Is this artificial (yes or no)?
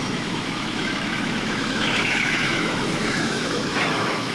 yes